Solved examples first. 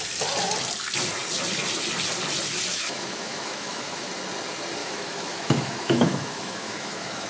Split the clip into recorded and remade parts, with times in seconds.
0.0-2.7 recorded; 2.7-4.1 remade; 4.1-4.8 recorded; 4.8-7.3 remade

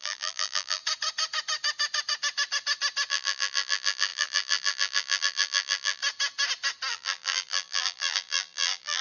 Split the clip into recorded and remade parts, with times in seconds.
0.0-0.8 remade; 0.8-3.1 recorded; 3.1-6.0 remade; 6.0-6.9 recorded; 6.9-9.0 remade

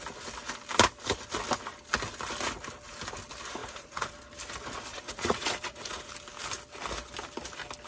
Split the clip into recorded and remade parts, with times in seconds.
0.0-3.6 recorded; 3.6-4.1 remade; 4.1-4.9 recorded; 4.9-6.1 remade; 6.1-7.9 recorded

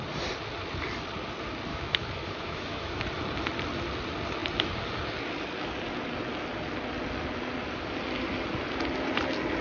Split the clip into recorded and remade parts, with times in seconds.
0.0-1.7 recorded; 1.7-3.0 remade; 3.0-9.6 recorded

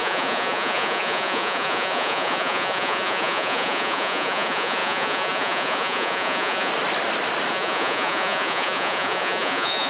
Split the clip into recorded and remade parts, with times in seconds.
0.0-6.7 remade; 6.7-7.5 recorded; 7.5-9.9 remade

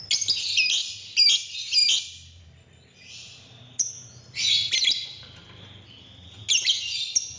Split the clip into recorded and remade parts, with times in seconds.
0.0-7.4 recorded